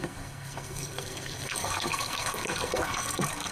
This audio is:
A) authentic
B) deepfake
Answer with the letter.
B